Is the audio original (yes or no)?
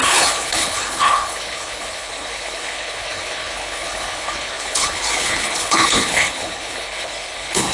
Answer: no